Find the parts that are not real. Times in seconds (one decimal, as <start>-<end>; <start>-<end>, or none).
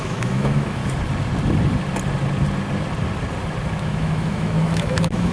0.0-0.8; 3.8-5.3